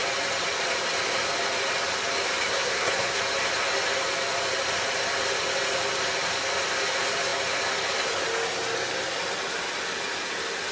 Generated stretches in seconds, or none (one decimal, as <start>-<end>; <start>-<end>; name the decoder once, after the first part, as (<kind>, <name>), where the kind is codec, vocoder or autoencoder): 2.5-3.2 (codec, SNAC)

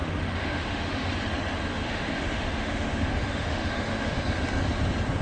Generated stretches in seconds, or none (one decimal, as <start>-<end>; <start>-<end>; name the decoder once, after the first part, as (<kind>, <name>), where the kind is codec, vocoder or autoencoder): 0.0-1.1 (autoencoder, DAC-VAE); 1.7-4.2

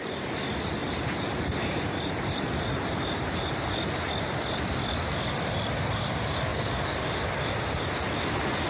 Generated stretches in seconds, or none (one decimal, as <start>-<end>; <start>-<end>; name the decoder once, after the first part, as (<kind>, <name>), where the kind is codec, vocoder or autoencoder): 0.8-3.6 (vocoder, BigVGAN v2)

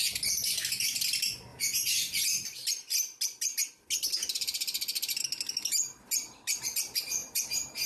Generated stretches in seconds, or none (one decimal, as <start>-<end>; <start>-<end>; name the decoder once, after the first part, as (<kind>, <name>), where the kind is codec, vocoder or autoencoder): 1.5-2.2 (vocoder, BigVGAN v2); 7.2-7.9